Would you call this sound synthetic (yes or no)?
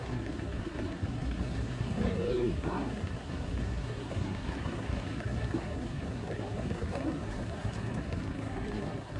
yes